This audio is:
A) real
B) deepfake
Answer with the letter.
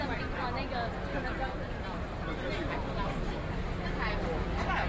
A